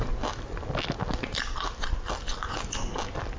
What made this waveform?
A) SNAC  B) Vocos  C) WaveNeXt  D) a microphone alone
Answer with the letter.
D